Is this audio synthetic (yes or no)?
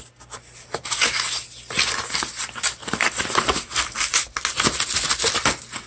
no